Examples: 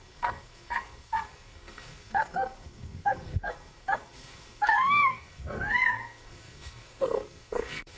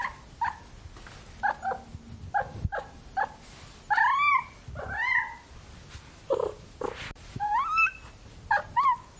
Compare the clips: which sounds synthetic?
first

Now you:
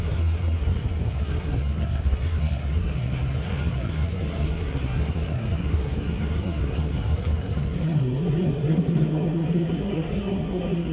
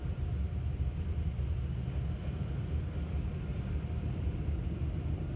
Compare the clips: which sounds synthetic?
first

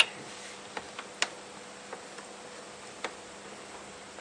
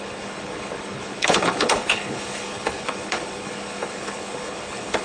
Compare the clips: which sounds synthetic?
second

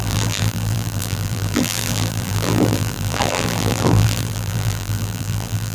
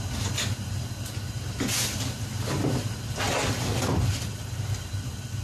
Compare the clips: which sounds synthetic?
first